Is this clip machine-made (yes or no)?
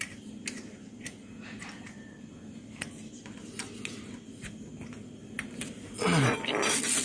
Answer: no